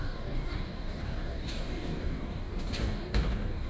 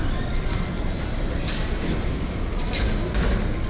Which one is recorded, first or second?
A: second